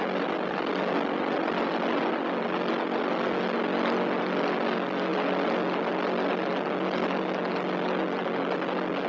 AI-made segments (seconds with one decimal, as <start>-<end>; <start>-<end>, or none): none